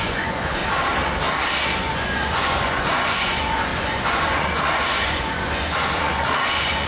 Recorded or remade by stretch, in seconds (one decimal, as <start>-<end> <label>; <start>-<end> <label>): 0.0-0.6 remade; 0.6-1.8 recorded; 1.8-6.9 remade